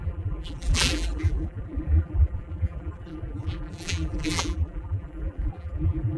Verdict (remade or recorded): remade